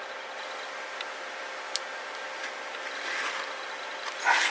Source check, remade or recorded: recorded